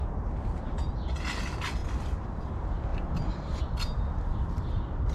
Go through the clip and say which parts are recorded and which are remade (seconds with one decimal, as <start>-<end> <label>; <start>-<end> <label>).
0.0-1.8 recorded; 1.8-2.5 remade; 2.5-2.9 recorded; 2.9-3.6 remade; 3.6-5.1 recorded